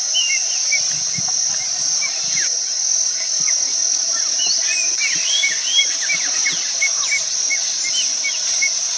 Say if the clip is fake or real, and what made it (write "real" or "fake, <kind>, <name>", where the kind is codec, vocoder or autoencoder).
real